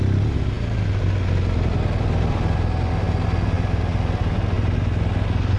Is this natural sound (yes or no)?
yes